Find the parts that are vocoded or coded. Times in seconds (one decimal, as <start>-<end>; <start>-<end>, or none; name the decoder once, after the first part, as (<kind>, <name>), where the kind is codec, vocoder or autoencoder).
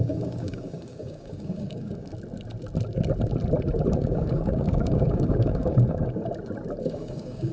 0.0-2.1 (codec, DAC); 3.9-6.2; 6.8-7.5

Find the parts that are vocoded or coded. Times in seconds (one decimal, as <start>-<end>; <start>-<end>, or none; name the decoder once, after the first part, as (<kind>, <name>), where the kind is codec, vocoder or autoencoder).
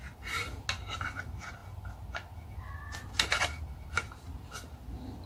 none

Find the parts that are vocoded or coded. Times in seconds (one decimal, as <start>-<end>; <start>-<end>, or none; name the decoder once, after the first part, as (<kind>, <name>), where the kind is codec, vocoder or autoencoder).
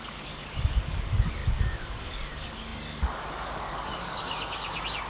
0.0-5.1 (codec, DAC)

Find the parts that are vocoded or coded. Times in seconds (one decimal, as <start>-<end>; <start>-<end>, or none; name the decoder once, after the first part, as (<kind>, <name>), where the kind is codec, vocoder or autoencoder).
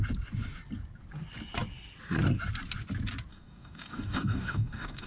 3.3-5.1 (codec, DAC)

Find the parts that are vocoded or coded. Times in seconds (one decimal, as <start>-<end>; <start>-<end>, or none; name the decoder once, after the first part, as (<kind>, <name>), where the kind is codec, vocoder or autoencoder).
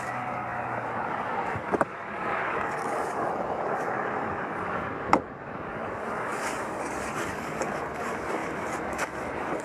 0.0-9.6 (codec, DAC)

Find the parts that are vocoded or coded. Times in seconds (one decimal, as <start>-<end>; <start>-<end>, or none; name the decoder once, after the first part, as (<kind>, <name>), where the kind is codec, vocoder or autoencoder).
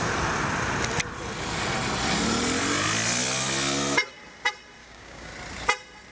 4.8-5.3 (codec, DAC)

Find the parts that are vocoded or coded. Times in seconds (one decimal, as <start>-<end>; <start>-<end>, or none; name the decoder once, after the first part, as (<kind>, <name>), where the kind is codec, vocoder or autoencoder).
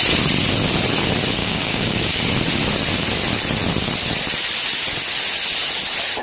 1.4-2.2 (codec, DAC)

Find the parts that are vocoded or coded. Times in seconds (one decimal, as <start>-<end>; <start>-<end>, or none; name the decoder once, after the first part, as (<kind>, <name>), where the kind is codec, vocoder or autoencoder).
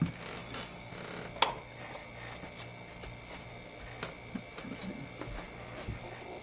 0.4-0.9 (codec, DAC)